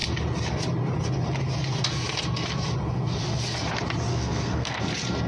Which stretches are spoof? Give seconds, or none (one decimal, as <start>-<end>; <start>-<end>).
4.1-4.8